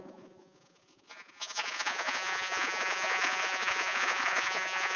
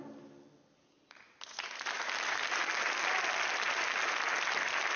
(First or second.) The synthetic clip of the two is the first